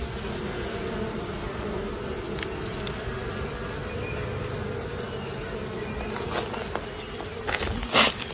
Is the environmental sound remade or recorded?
recorded